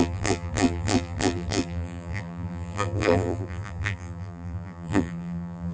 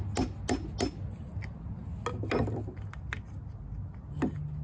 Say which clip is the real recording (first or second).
second